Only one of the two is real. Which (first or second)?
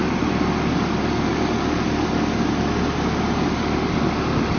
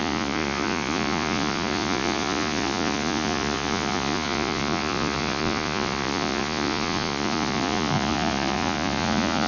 first